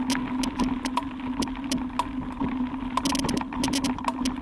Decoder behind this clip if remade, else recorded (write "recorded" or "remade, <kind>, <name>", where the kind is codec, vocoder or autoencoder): recorded